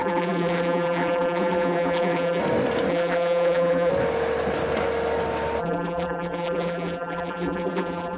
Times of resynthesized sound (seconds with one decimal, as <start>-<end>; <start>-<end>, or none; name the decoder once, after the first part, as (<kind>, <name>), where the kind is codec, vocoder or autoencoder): 0.0-2.4 (vocoder, BigVGAN v2); 2.9-3.9; 5.6-8.2